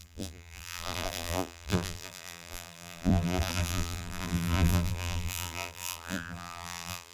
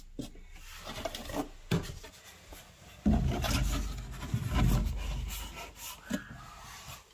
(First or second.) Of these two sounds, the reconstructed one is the first